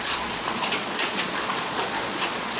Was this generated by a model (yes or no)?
yes